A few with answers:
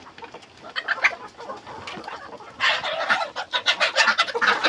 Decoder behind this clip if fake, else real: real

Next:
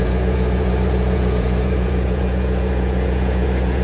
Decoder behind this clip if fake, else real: fake, vocoder, Vocos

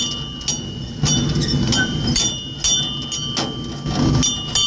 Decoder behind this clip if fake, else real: real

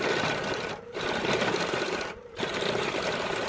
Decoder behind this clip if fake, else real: fake, vocoder, BigVGAN v2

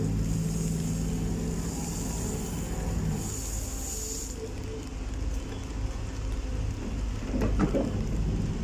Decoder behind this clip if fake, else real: real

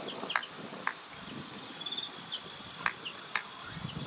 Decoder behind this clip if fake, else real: real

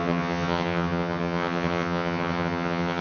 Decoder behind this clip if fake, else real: fake, vocoder, HiFi-GAN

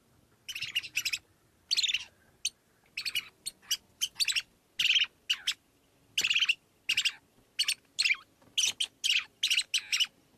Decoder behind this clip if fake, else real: real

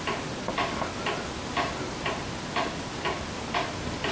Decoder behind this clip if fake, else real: real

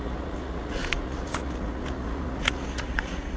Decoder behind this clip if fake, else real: fake, vocoder, Vocos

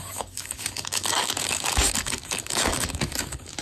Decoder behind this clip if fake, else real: fake, codec, DAC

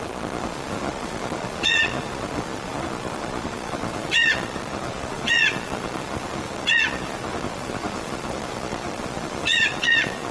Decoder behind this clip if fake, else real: fake, vocoder, Vocos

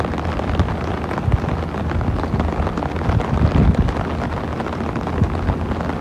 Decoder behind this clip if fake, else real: real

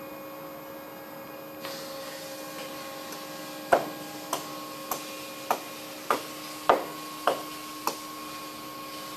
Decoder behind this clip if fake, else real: real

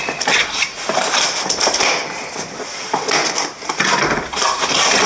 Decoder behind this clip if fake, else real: real